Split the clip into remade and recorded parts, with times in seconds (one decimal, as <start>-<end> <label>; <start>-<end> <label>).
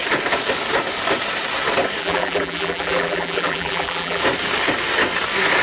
0.0-2.0 recorded; 2.0-4.2 remade; 4.2-5.6 recorded